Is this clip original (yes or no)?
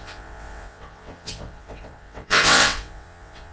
no